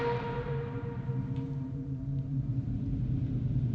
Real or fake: fake